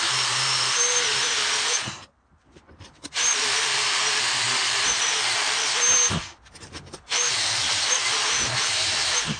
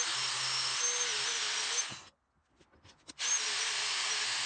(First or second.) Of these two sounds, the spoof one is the first